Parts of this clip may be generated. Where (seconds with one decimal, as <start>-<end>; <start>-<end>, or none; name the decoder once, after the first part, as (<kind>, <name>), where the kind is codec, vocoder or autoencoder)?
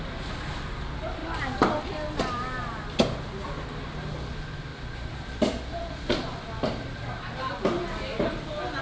none